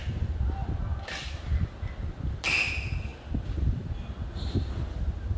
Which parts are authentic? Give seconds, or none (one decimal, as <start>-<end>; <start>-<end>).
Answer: 0.0-5.4